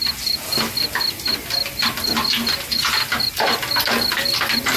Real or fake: real